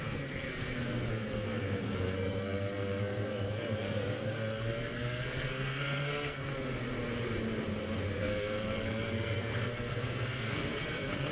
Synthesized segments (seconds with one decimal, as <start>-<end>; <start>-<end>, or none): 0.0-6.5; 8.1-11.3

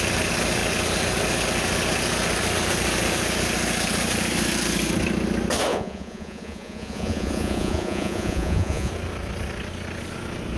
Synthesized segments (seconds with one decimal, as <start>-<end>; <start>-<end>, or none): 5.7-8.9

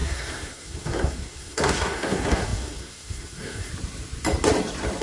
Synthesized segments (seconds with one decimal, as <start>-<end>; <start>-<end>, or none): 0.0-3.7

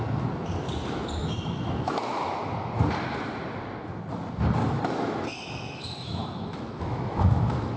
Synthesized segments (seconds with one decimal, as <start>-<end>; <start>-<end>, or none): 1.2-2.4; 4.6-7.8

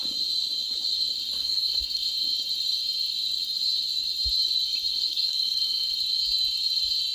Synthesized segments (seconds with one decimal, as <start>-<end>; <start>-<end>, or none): 1.4-2.1; 4.9-5.9